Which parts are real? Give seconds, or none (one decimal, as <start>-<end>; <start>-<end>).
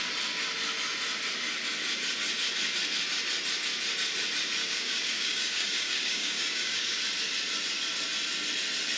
0.0-4.6; 7.0-9.0